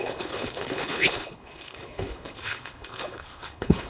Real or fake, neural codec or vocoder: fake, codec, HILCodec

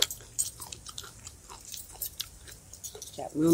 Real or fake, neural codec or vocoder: real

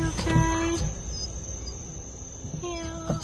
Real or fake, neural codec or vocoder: real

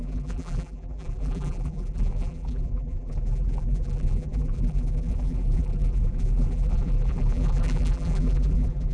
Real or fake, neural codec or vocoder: fake, vocoder, BigVGAN v2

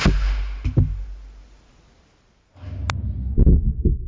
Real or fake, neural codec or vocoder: real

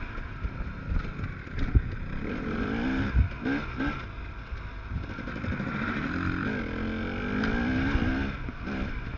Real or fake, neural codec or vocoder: real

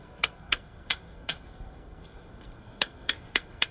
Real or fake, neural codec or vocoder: fake, codec, SNAC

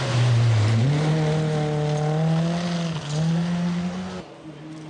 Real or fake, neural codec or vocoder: real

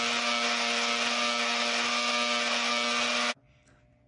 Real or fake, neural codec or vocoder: real